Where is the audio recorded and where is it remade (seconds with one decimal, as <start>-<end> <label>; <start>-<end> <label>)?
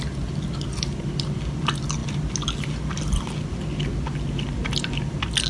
0.0-5.5 recorded